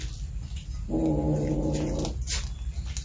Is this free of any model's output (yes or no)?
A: yes